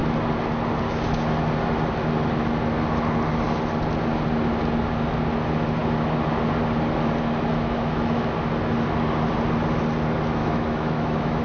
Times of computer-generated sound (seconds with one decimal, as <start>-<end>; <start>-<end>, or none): 7.5-8.2; 10.4-11.4